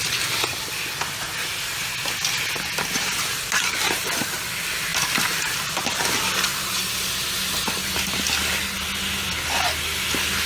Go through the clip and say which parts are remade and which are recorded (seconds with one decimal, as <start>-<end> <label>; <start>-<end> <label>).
0.0-10.5 recorded